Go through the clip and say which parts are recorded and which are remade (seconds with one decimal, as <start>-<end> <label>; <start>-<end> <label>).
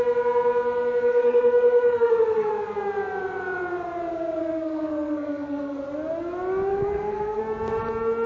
0.0-1.1 recorded; 1.1-2.5 remade; 2.5-4.4 recorded; 4.4-5.8 remade; 5.8-6.7 recorded; 6.7-7.4 remade; 7.4-8.3 recorded